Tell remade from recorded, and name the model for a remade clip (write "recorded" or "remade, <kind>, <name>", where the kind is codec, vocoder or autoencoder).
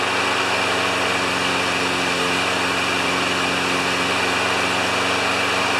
recorded